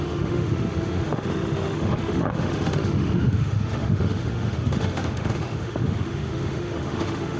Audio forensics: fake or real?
fake